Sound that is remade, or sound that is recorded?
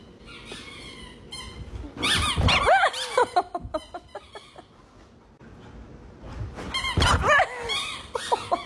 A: recorded